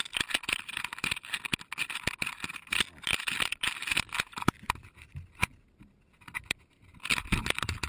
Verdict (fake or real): real